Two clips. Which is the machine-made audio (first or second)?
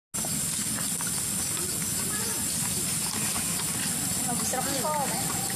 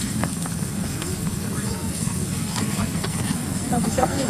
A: second